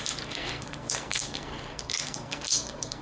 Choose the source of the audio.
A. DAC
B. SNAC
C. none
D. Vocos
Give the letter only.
B